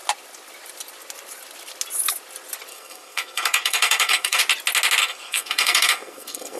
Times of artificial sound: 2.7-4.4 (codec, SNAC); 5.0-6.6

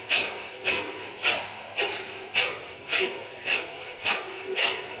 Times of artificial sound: 0.0-1.0 (codec, SNAC); 2.4-5.0